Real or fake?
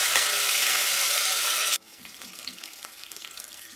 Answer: fake